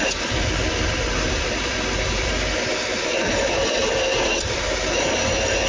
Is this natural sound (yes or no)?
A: no